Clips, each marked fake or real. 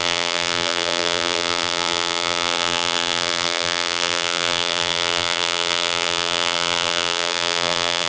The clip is fake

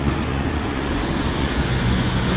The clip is fake